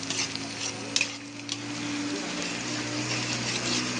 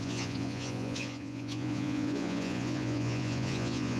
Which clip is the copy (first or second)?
second